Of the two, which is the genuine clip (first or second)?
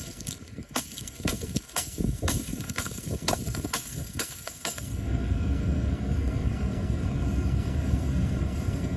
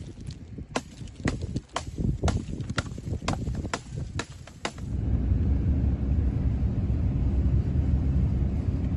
second